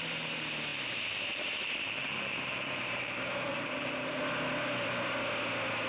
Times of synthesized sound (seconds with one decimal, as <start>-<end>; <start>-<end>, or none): 0.7-4.2